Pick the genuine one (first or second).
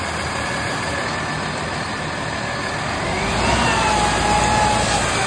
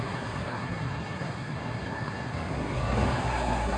first